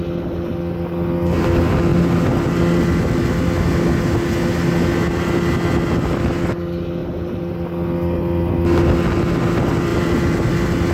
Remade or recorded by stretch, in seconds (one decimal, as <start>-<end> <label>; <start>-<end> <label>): 0.0-7.0 recorded; 7.0-7.5 remade; 7.5-9.9 recorded; 9.9-10.5 remade; 10.5-10.9 recorded